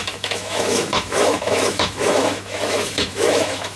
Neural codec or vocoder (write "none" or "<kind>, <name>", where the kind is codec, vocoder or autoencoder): autoencoder, DAC-VAE